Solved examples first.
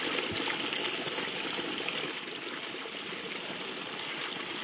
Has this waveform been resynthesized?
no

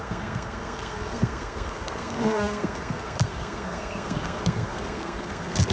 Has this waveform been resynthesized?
yes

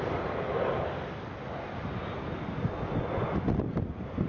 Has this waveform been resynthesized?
no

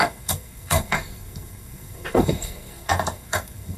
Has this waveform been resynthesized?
yes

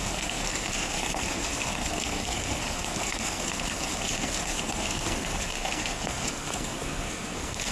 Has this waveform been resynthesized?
yes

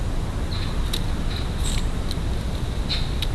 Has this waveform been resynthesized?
no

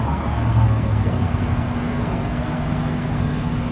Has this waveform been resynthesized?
yes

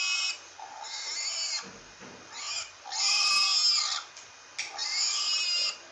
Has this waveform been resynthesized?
no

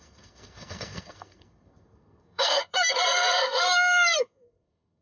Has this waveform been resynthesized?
yes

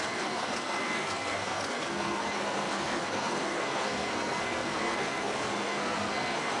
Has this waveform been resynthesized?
yes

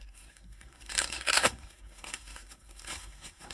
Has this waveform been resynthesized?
yes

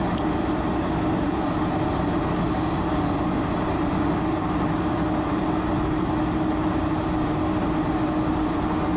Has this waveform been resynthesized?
no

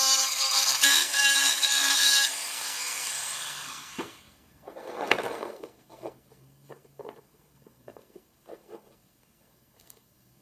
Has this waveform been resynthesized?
yes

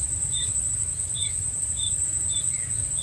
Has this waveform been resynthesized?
no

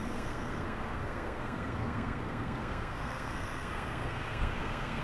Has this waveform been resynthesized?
yes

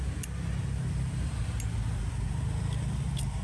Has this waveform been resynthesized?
no